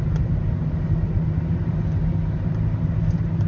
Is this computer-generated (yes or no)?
no